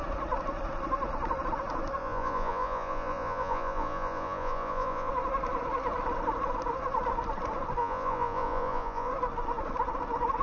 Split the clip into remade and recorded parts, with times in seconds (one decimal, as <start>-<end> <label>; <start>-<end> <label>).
0.0-2.0 recorded; 2.0-5.1 remade; 5.1-7.8 recorded; 7.8-9.1 remade; 9.1-10.4 recorded